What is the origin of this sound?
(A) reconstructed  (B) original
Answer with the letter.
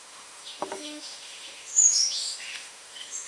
A